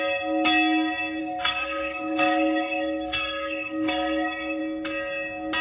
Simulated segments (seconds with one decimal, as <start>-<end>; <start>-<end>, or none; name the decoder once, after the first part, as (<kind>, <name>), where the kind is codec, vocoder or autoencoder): 1.2-4.6 (codec, SNAC)